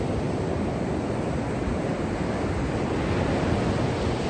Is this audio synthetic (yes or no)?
no